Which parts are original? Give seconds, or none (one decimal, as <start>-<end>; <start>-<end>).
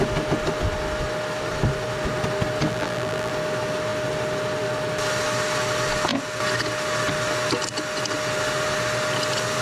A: 0.0-2.7; 3.3-9.6